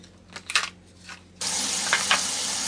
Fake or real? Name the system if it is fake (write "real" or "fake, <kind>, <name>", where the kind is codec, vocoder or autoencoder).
real